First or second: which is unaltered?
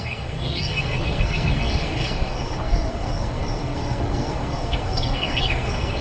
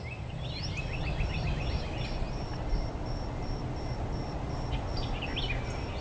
second